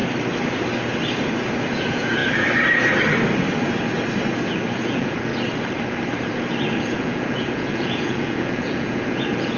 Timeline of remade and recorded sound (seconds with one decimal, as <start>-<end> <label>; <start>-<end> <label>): 0.0-1.7 recorded; 1.7-2.2 remade; 2.2-4.8 recorded; 4.8-5.3 remade; 5.3-6.8 recorded; 6.8-9.6 remade